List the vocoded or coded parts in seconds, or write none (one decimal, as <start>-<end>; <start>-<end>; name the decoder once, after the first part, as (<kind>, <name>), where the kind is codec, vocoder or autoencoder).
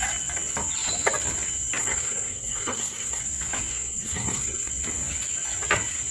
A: 1.8-3.2 (codec, SNAC); 3.7-4.7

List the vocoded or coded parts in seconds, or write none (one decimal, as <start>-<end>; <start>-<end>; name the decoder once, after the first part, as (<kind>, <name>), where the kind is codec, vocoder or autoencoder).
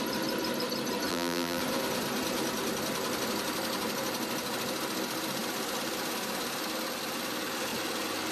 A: 1.1-1.6 (vocoder, BigVGAN v2)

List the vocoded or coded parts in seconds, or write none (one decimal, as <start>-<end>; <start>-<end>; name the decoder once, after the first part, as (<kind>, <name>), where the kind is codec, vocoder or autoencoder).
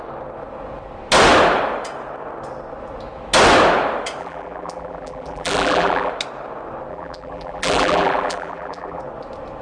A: 4.2-6.1 (vocoder, BigVGAN v2); 6.9-9.0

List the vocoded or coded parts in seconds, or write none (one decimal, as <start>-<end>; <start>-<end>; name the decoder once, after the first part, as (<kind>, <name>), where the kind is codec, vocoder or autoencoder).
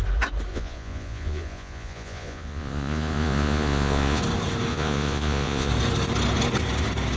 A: 0.5-4.2 (vocoder, Vocos); 4.7-5.7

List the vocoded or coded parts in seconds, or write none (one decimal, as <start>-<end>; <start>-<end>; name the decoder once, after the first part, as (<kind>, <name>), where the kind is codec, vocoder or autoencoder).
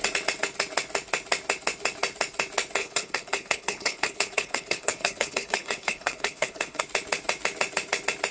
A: 2.8-6.8 (codec, HILCodec)